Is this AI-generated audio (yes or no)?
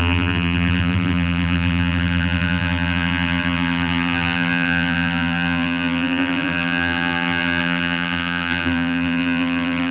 yes